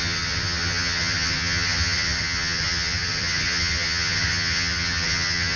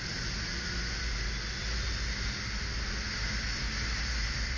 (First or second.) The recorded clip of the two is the second